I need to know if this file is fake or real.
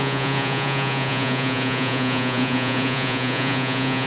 fake